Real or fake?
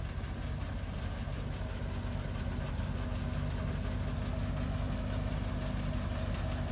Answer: real